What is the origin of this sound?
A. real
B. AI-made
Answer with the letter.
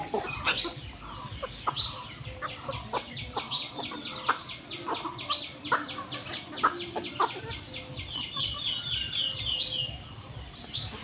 A